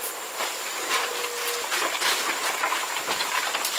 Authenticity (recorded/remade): recorded